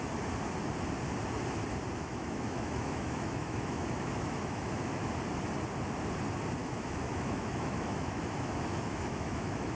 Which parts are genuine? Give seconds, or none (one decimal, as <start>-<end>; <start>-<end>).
0.0-2.0; 5.1-6.6